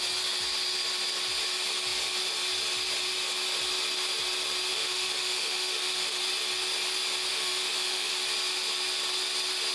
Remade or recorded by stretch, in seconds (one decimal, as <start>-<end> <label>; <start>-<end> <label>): 0.0-4.7 recorded; 4.7-6.2 remade; 6.2-7.3 recorded; 7.3-8.1 remade; 8.1-9.7 recorded